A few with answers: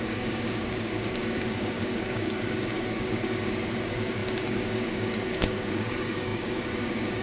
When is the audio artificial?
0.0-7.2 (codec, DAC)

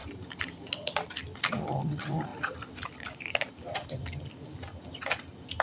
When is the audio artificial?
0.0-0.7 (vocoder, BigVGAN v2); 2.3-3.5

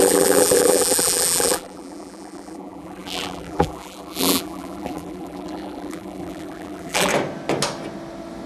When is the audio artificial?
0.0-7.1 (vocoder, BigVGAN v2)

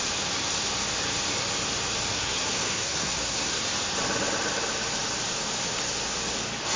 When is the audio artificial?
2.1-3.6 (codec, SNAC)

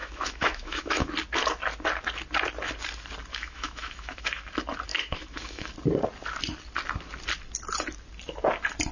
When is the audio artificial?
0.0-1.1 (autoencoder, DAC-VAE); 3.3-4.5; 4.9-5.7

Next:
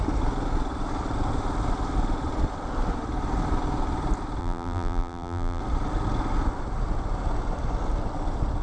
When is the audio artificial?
4.4-5.6 (vocoder, BigVGAN v2)